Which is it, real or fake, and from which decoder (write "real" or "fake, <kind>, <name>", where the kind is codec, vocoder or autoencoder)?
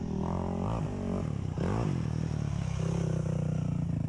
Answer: real